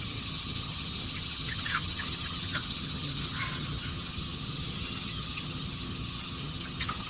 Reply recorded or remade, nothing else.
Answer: remade